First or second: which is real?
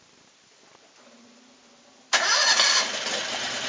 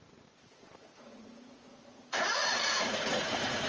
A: first